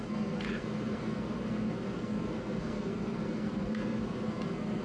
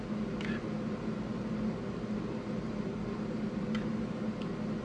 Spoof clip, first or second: first